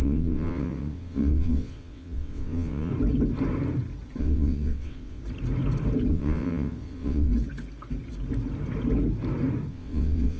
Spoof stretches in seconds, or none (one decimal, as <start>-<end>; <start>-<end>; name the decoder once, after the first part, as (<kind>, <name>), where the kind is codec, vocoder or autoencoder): 0.0-2.9 (vocoder, WaveNeXt); 4.2-5.2; 6.1-7.3; 9.7-10.4

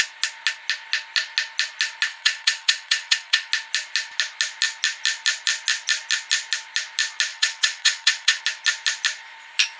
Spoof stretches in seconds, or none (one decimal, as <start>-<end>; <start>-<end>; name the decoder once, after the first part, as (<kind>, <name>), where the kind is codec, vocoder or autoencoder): 2.1-3.5 (vocoder, WaveNeXt); 7.3-8.4